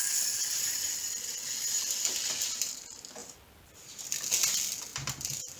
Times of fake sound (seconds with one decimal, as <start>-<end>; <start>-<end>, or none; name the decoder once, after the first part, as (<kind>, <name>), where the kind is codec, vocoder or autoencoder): 3.2-4.0 (vocoder, BigVGAN v2); 4.9-5.6